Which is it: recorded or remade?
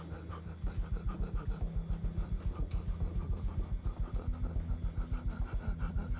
recorded